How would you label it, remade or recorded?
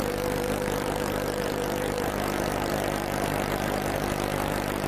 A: remade